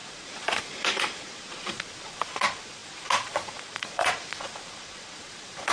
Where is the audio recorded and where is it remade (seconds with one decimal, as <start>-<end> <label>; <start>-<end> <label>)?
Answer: 0.0-5.7 remade